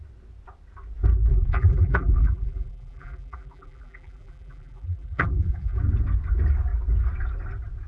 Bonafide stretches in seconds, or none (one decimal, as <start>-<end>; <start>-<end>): 0.0-1.3; 5.8-7.9